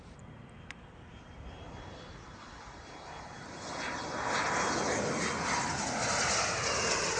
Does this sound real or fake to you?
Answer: real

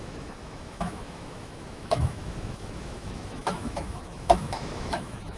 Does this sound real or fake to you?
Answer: fake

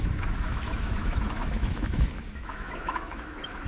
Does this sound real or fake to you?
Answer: fake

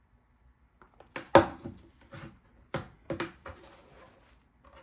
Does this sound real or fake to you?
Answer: real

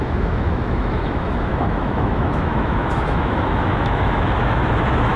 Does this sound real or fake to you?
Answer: fake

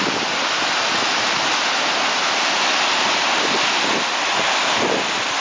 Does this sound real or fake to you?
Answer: real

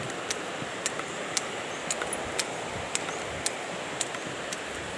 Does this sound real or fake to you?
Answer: real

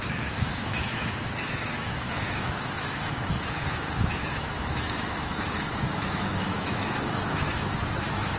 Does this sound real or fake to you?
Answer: fake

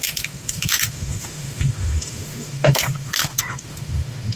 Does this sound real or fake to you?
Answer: fake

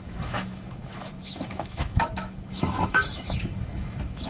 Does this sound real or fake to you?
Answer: fake